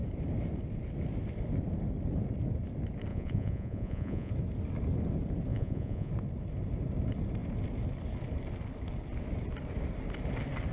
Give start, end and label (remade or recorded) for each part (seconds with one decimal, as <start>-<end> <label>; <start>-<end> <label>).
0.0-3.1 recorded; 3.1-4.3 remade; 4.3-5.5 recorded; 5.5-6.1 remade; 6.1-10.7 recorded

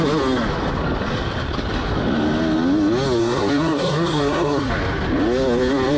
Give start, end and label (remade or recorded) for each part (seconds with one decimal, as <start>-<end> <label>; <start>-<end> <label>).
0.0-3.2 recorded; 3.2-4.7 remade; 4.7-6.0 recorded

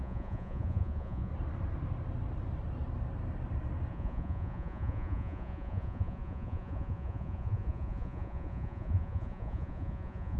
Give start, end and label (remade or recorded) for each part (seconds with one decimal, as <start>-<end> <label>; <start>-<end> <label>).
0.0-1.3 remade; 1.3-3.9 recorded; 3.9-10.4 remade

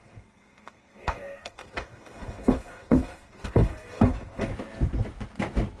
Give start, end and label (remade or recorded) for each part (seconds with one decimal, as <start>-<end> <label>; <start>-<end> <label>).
0.0-4.5 remade; 4.5-5.8 recorded

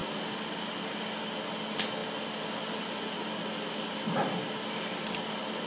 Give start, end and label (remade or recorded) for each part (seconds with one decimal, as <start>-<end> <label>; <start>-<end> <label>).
0.0-5.7 recorded

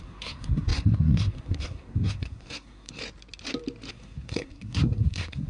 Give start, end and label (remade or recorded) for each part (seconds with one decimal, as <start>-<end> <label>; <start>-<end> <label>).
0.0-3.0 remade; 3.0-3.9 recorded; 3.9-5.5 remade